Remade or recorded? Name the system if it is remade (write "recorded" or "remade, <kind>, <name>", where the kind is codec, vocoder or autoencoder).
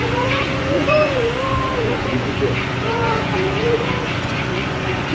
remade, vocoder, Vocos